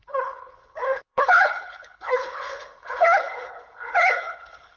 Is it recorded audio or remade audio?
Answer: remade